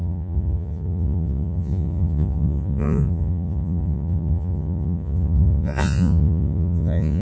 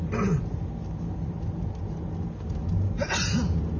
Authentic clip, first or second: second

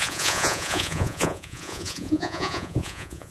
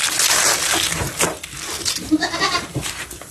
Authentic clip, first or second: second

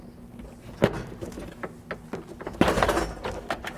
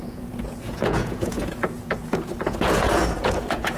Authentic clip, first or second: first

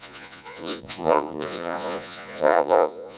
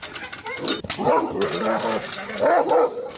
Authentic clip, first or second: second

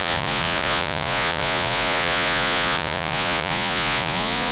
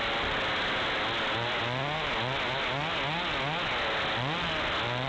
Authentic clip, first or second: second